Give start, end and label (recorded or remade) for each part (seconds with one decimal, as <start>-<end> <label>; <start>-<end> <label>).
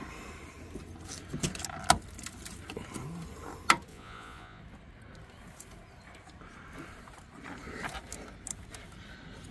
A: 0.0-3.9 recorded; 3.9-4.6 remade; 4.6-9.5 recorded